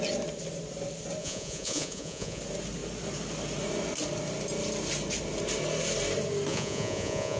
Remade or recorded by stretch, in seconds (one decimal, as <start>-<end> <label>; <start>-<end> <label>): 0.0-1.2 recorded; 1.2-2.4 remade; 2.4-6.5 recorded; 6.5-7.4 remade